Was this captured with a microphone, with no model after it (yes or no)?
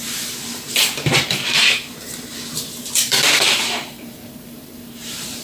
no